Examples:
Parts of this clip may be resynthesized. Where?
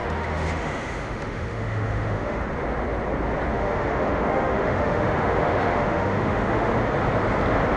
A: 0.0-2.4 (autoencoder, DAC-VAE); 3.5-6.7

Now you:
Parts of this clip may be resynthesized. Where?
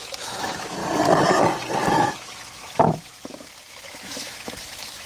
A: 0.0-0.8 (autoencoder, DAC-VAE); 1.9-5.1